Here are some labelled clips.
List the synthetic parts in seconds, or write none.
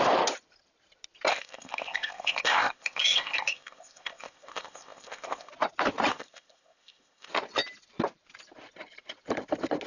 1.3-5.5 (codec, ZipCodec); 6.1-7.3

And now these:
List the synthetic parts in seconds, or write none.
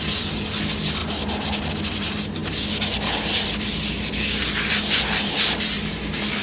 none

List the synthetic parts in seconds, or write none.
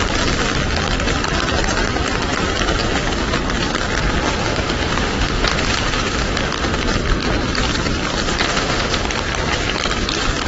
4.4-6.8 (autoencoder, DAC-VAE); 8.4-9.0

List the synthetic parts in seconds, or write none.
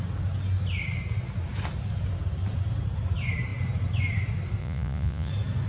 4.6-5.3 (vocoder, Vocos)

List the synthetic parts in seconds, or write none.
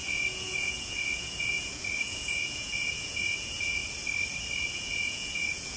0.0-3.8 (vocoder, Vocos); 4.6-5.8